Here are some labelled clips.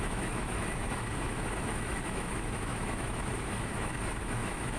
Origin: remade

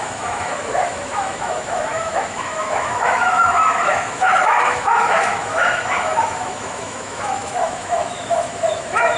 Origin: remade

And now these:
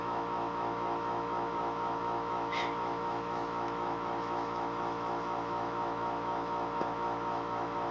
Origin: remade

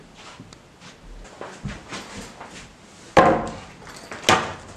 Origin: recorded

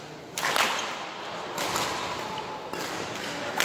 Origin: recorded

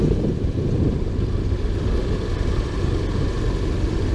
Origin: recorded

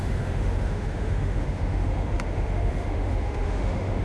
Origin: remade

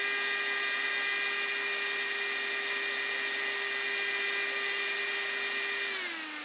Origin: recorded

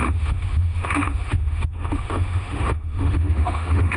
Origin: remade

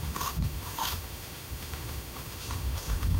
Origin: remade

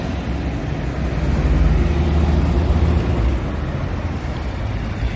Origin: recorded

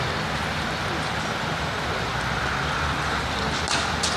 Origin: recorded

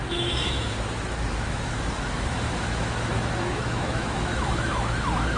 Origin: remade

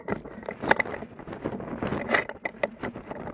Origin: recorded